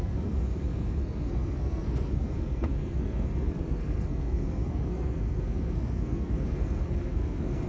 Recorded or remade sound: remade